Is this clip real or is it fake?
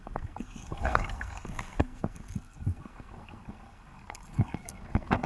fake